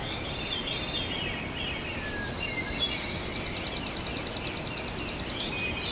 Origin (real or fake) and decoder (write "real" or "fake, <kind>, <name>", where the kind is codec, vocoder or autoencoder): real